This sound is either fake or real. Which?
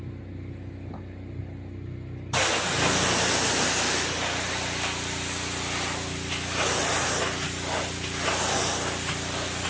real